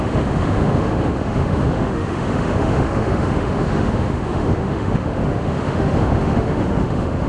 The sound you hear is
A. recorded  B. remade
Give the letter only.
B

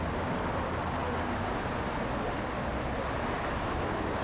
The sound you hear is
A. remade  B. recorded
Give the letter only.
B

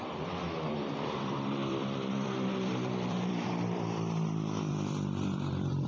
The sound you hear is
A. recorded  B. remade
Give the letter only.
B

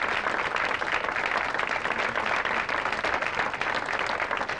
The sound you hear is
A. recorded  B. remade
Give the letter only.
A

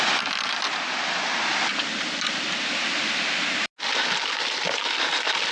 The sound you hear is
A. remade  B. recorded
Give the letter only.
B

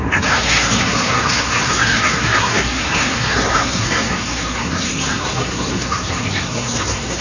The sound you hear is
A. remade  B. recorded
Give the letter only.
A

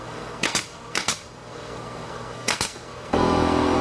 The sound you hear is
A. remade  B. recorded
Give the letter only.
A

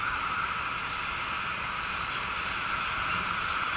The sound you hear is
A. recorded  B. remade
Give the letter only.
A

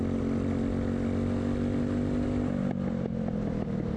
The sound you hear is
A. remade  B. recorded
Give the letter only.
B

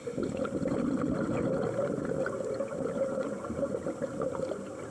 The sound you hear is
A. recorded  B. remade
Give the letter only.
A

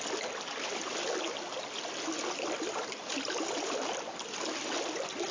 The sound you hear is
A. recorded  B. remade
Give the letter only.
A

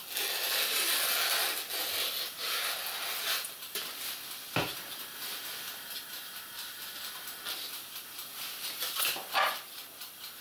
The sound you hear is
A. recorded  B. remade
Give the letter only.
A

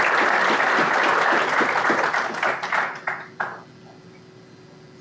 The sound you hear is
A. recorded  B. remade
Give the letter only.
A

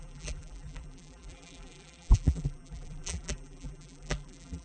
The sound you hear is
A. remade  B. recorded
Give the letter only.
A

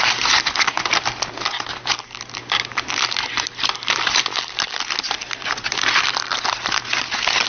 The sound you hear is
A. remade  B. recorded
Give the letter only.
B